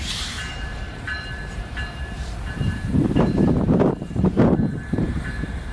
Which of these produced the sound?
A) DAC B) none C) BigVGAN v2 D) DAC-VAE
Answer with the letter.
C